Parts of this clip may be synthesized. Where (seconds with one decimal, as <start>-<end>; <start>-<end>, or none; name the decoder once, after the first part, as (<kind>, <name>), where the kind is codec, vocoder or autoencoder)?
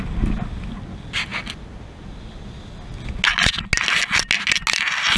none